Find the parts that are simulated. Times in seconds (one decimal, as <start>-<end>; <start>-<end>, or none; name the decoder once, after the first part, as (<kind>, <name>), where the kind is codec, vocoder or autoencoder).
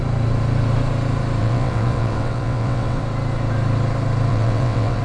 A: 1.4-3.0 (vocoder, WaveNeXt); 4.3-5.0